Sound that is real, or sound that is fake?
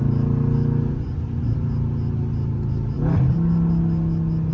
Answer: real